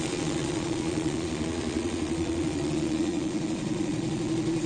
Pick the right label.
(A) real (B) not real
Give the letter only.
B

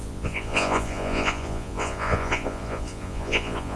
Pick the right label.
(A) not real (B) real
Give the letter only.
A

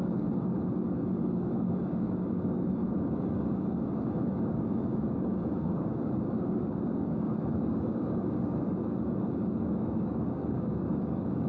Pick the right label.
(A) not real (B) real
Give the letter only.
A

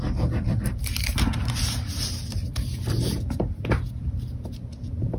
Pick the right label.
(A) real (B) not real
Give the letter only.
B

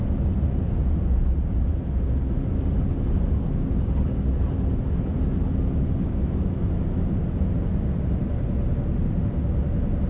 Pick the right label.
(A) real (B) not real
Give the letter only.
A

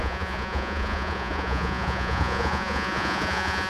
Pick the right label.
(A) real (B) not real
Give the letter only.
B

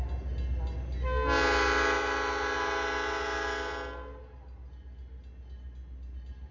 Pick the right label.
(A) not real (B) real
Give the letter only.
B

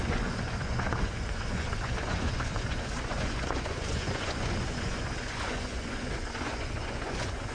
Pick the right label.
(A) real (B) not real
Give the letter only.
B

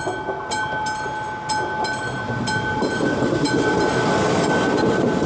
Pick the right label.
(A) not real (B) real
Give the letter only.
B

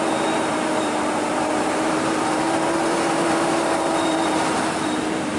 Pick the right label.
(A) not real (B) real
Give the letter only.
A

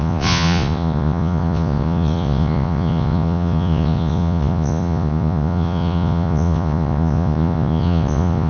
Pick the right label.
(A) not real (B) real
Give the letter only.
A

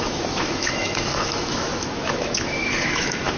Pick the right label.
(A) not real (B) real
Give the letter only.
A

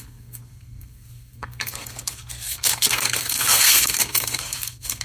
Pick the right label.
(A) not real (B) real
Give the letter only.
A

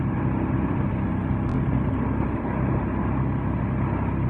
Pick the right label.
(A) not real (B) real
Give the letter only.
B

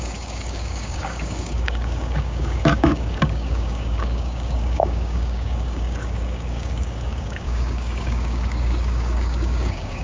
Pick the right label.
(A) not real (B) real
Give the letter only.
A